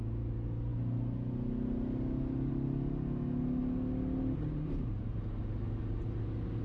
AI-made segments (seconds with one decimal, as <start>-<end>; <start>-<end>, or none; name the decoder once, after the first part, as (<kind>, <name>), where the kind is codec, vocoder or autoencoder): none